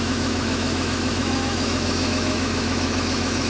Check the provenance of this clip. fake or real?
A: fake